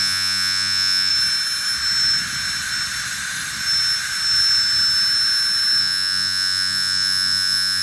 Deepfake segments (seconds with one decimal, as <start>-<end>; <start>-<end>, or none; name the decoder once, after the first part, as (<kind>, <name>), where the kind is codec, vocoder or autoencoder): 0.0-1.1 (vocoder, Vocos); 5.8-7.8